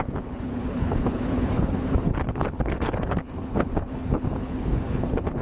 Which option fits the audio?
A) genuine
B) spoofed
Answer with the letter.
B